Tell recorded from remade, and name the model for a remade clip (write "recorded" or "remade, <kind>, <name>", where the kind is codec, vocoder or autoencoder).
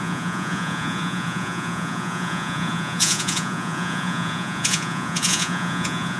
remade, vocoder, Vocos